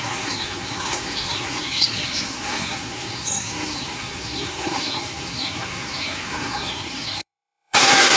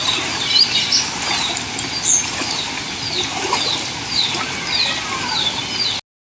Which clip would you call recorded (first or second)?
second